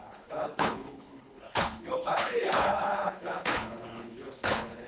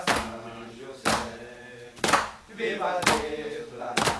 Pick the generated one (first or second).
first